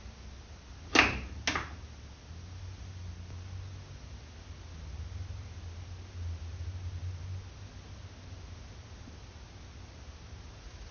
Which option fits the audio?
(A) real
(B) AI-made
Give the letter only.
A